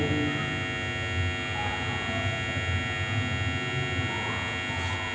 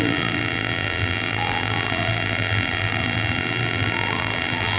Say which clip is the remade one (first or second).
second